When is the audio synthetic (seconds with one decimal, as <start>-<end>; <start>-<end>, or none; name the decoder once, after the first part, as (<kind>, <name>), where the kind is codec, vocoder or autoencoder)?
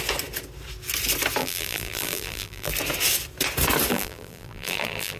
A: 1.4-2.7 (vocoder, BigVGAN v2); 3.9-5.2